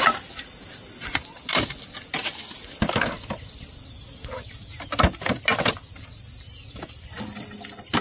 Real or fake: real